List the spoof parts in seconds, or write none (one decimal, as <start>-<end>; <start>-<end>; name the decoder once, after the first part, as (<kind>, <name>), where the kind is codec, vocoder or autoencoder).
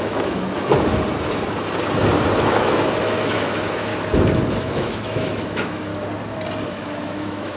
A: 0.0-0.7 (autoencoder, DAC-VAE); 2.4-3.9; 4.6-5.9; 6.6-7.6